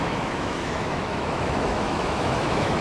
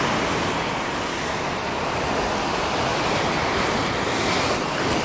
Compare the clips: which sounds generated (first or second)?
first